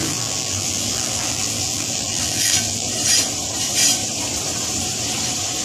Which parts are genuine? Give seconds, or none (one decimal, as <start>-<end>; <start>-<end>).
2.9-5.6